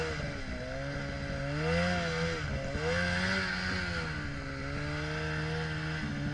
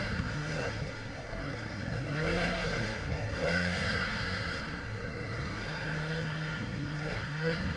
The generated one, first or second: second